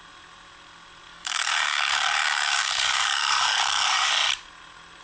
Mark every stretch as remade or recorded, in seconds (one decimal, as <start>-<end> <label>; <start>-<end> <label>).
0.0-1.1 recorded; 1.1-4.1 remade; 4.1-5.0 recorded